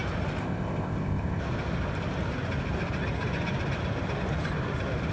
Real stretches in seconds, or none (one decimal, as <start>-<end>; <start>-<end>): 0.0-0.4; 1.4-5.1

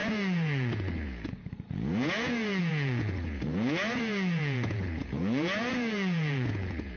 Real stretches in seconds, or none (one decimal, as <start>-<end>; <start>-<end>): none

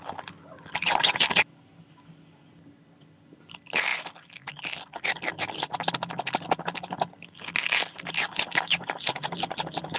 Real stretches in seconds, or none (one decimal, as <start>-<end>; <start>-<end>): 0.0-10.0

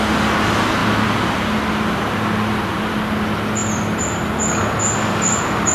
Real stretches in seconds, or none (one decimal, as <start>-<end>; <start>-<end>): 0.0-5.7